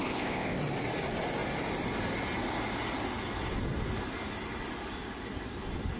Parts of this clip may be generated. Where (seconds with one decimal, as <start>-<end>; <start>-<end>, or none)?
0.0-0.6

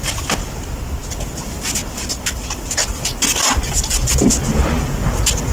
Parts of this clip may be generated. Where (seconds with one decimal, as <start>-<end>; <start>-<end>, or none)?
none

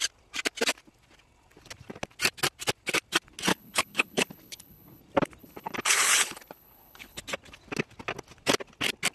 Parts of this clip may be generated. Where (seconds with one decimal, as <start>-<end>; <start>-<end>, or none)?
3.5-5.0; 5.4-7.2

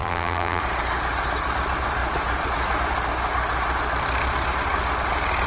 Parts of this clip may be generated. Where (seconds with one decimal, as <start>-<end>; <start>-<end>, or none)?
0.0-0.6

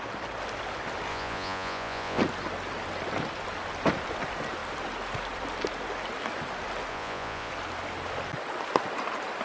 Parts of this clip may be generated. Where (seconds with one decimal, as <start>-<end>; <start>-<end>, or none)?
1.1-2.2; 6.9-7.5